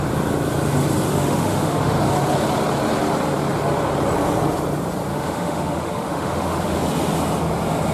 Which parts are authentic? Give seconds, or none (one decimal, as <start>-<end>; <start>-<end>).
0.0-1.1; 2.1-5.1; 6.8-7.9